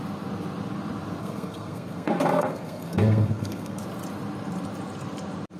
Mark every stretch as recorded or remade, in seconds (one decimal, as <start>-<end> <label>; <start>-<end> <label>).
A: 0.0-1.2 recorded; 1.2-3.8 remade; 3.8-5.6 recorded